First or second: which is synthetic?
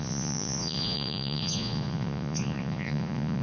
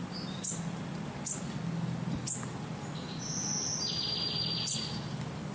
first